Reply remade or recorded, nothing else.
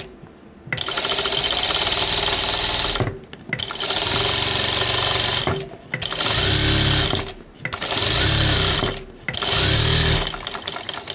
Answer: recorded